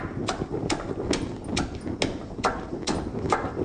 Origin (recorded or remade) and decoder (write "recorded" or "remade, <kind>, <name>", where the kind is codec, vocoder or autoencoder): recorded